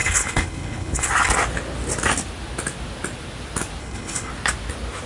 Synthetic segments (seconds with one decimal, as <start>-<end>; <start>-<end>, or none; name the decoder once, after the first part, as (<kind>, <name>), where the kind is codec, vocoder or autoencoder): 0.0-1.1 (codec, HILCodec); 3.8-4.3